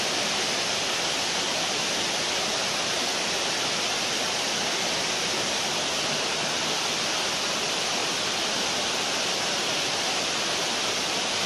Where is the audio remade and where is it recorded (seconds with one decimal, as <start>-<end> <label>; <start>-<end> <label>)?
0.0-11.5 recorded